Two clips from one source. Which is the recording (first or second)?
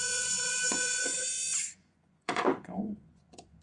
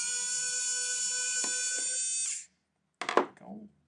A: second